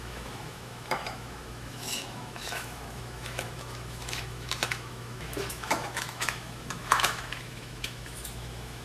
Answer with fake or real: fake